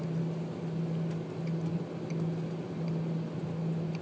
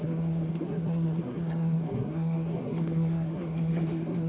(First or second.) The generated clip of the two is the second